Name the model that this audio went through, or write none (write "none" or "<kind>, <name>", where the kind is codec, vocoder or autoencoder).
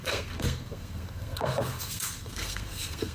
codec, SNAC